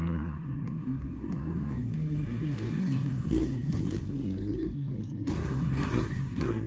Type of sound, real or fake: fake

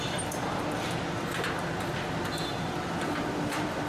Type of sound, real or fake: fake